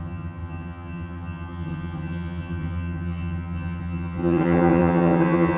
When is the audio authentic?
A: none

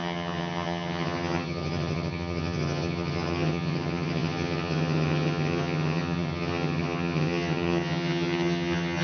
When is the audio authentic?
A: none

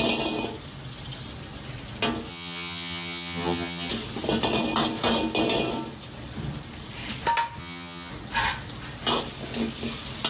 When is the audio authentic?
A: 0.0-2.3; 3.9-7.6; 8.1-10.3

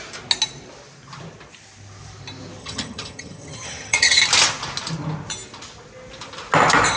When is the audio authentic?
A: 0.0-2.6; 4.2-7.0